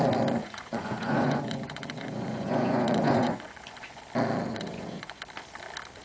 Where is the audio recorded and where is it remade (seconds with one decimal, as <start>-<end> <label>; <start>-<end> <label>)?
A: 0.0-0.4 recorded; 0.4-4.0 remade; 4.0-4.5 recorded; 4.5-5.2 remade; 5.2-6.0 recorded